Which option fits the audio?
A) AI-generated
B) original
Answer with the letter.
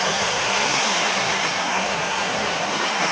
A